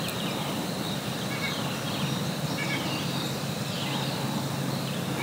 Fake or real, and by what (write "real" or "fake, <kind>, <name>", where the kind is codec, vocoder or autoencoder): real